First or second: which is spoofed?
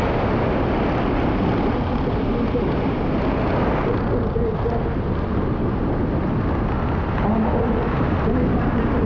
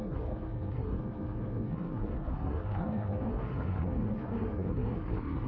second